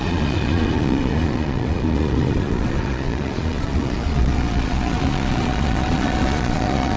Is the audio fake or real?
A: fake